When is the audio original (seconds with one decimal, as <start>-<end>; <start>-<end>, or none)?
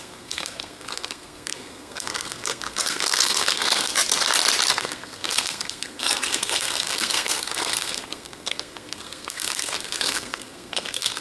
3.9-4.7